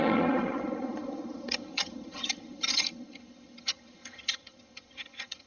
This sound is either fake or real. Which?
fake